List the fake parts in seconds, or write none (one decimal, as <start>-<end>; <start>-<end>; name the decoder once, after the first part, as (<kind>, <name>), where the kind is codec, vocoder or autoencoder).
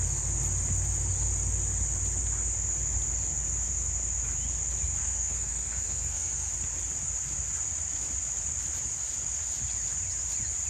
5.0-6.5 (codec, SNAC)